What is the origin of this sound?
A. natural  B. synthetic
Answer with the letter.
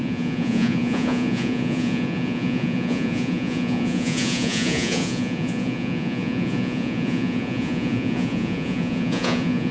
B